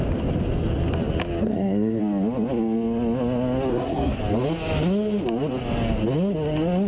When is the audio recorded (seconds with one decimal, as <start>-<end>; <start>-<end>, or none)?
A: 0.0-1.4; 2.0-3.7; 4.2-6.9